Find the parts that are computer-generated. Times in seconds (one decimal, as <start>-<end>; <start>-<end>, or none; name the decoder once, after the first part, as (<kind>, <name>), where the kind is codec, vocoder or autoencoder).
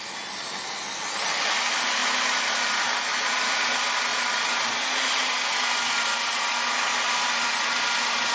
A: none